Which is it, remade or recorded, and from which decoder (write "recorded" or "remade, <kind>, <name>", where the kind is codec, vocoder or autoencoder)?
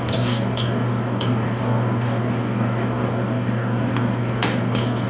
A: remade, codec, DAC